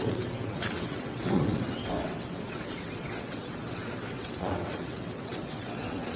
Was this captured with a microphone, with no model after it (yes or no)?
no